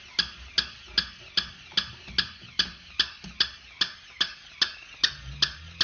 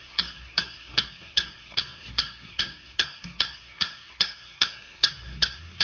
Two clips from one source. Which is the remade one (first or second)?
second